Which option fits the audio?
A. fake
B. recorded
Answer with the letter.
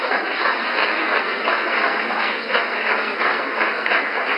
A